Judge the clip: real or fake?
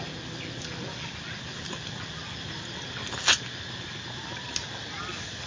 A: real